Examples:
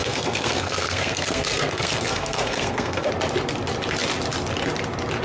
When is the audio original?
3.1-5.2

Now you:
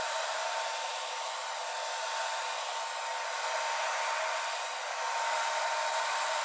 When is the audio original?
0.0-6.4

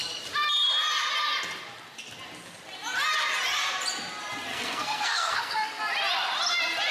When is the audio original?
0.0-4.5; 5.8-6.9

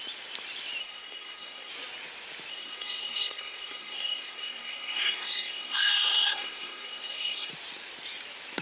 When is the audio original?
0.0-0.8; 1.7-2.5; 7.5-8.6

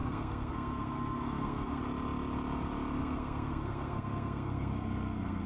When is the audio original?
1.8-3.0

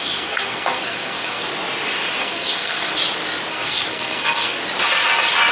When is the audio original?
1.5-2.2; 2.9-3.5; 4.6-5.5